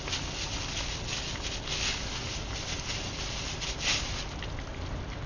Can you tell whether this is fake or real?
real